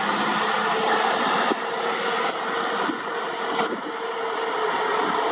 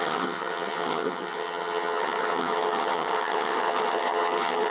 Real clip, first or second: first